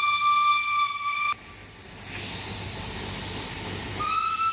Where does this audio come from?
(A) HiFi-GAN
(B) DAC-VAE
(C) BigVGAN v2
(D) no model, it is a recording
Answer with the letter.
D